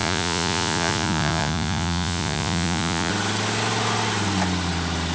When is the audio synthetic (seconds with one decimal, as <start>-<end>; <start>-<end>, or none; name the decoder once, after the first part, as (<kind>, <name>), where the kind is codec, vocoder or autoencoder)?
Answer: 0.0-3.1 (vocoder, Vocos)

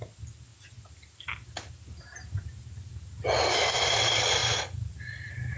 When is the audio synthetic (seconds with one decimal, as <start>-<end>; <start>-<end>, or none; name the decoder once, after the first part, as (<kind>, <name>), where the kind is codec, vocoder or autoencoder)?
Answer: none

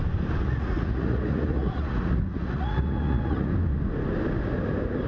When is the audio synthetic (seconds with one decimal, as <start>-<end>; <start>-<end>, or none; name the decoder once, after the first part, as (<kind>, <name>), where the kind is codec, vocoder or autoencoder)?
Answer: 0.4-3.5 (vocoder, Vocos)

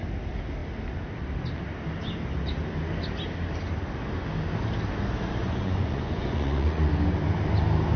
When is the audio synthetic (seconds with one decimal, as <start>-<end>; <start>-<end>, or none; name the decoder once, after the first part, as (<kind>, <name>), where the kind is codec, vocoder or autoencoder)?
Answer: 5.4-6.9 (vocoder, Vocos)

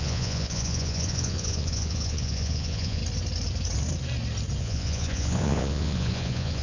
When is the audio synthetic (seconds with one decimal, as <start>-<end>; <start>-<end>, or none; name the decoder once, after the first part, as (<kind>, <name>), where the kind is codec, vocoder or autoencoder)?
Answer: 0.0-3.0 (vocoder, Vocos); 4.6-6.6

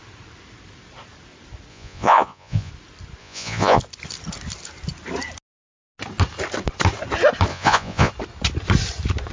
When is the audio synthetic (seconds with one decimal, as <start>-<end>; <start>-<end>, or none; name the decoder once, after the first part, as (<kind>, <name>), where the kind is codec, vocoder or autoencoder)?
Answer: 1.7-2.7 (vocoder, Vocos); 3.2-3.8; 7.5-8.1

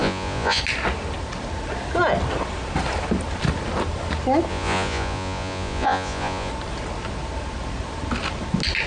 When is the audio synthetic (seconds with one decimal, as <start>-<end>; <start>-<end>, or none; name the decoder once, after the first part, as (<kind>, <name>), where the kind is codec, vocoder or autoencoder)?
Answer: 0.0-0.6 (vocoder, Vocos); 4.5-6.5